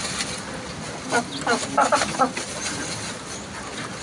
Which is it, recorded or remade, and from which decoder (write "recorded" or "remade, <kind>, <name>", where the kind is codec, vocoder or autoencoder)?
recorded